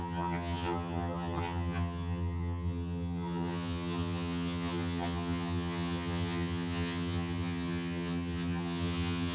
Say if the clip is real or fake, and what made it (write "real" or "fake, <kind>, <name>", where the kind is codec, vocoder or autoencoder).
fake, vocoder, HiFi-GAN